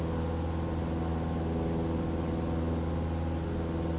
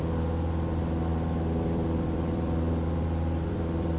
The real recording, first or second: first